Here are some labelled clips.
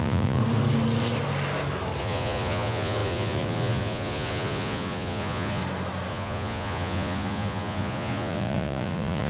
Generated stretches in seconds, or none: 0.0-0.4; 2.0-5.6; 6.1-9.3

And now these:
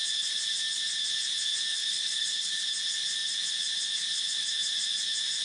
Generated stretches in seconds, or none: 1.7-2.6

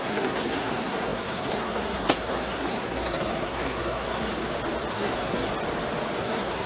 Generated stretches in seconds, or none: 0.0-4.3; 4.9-5.5; 6.2-6.7

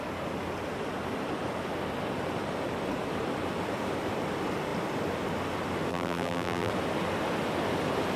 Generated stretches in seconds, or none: 5.9-6.7

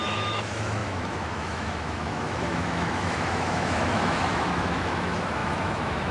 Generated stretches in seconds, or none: 0.0-6.1